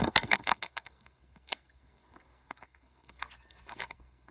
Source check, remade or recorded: remade